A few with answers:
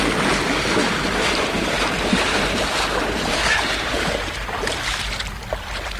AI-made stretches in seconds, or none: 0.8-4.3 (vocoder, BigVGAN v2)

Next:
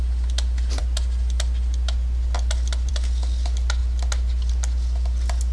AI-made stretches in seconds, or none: none

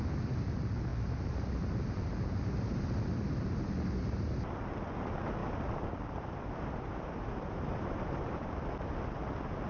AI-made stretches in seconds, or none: 5.4-8.5 (vocoder, BigVGAN v2)

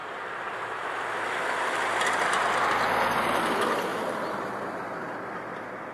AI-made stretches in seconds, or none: 0.0-0.9 (vocoder, BigVGAN v2); 3.9-5.9

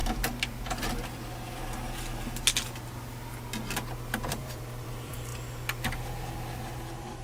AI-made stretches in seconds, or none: 4.3-5.3 (vocoder, BigVGAN v2); 6.6-7.2

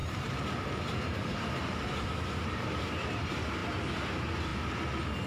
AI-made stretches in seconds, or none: 0.0-3.6 (vocoder, BigVGAN v2); 4.1-4.5

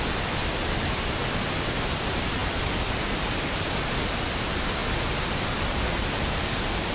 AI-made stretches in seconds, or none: 0.0-4.8 (vocoder, BigVGAN v2); 6.4-6.9

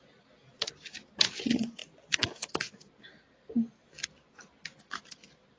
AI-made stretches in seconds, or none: none